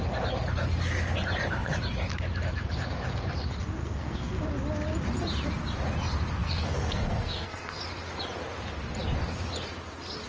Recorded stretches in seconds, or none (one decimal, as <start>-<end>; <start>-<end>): 0.0-3.8; 4.4-6.4; 7.8-10.3